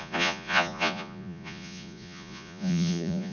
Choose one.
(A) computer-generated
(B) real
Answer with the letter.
A